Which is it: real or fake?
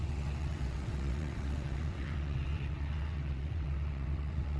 fake